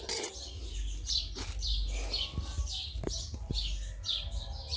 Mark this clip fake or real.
real